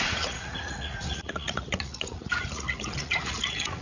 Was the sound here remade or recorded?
remade